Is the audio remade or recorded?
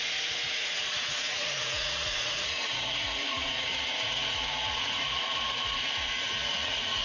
remade